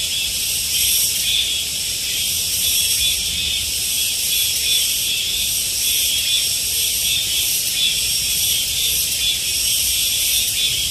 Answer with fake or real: fake